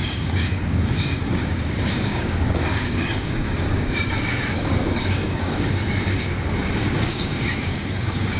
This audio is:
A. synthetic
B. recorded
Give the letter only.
A